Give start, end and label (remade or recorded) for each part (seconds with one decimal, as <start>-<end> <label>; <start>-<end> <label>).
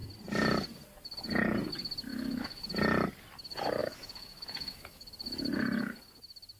0.0-2.1 recorded; 2.1-2.6 remade; 2.6-3.8 recorded; 3.8-5.0 remade; 5.0-6.6 recorded